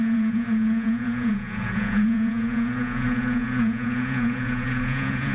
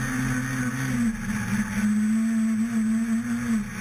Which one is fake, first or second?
first